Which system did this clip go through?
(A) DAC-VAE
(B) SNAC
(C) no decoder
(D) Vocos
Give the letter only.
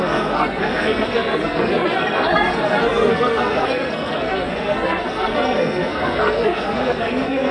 B